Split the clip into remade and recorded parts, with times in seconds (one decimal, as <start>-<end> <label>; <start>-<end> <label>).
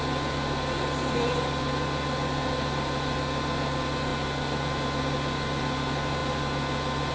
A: 0.0-7.1 recorded